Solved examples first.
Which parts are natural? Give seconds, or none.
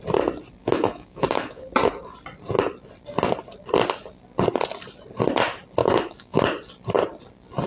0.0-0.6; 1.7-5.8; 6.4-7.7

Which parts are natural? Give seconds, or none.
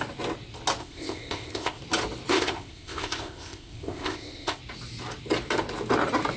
0.0-0.8; 1.8-2.3; 4.6-6.4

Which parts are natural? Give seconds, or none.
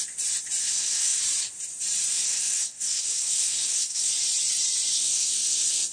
0.0-0.6; 1.2-2.1; 4.1-4.9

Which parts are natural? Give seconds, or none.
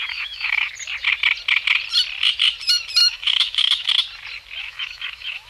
0.7-3.0; 3.9-4.6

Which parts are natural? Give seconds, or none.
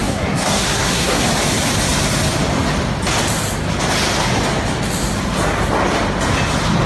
1.3-6.9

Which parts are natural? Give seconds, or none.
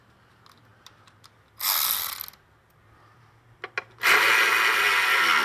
0.0-5.4